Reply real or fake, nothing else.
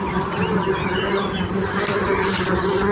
fake